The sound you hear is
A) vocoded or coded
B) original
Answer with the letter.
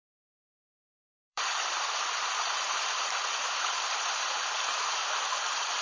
A